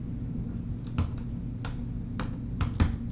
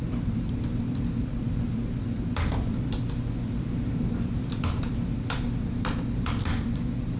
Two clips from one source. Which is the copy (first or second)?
second